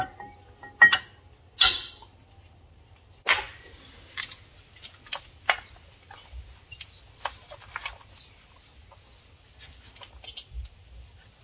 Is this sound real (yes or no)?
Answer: yes